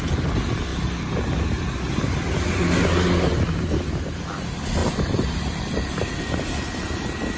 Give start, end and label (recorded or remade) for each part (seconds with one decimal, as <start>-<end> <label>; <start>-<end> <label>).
0.0-4.8 recorded; 4.8-5.6 remade; 5.6-7.4 recorded

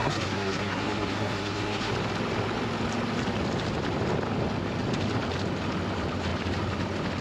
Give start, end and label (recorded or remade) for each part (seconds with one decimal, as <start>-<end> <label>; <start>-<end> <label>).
0.0-1.9 remade; 1.9-7.2 recorded

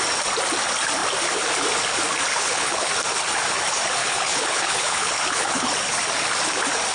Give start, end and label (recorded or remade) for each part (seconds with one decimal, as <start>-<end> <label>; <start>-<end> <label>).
0.0-2.3 recorded; 2.3-2.9 remade; 2.9-4.0 recorded; 4.0-5.7 remade; 5.7-6.9 recorded

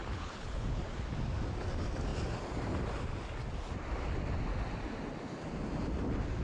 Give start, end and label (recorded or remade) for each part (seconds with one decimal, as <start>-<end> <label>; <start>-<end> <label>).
0.0-0.8 remade; 0.8-6.4 recorded

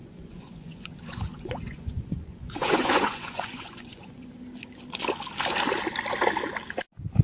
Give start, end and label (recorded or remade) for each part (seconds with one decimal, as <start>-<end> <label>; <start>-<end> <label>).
0.0-4.3 remade; 4.3-7.2 recorded

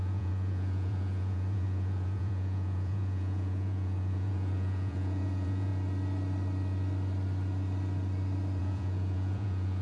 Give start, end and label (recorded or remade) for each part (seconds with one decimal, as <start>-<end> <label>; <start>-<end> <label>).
0.0-5.7 remade; 5.7-8.6 recorded; 8.6-9.8 remade

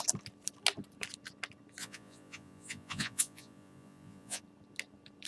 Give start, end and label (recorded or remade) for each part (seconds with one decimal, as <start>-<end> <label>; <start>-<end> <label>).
0.0-1.8 recorded; 1.8-4.4 remade; 4.4-5.3 recorded

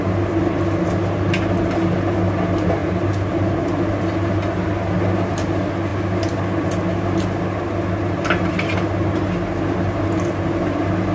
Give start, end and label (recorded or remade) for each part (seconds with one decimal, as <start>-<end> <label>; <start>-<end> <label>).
0.0-11.1 recorded